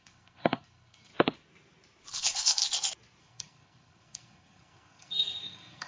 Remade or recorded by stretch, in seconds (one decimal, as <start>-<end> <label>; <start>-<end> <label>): 0.0-1.1 remade; 1.1-2.1 recorded; 2.1-2.6 remade; 2.6-3.2 recorded; 3.2-5.9 remade